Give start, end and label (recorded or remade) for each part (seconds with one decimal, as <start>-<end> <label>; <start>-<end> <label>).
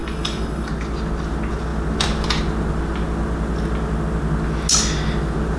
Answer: 0.0-0.7 remade; 0.7-5.6 recorded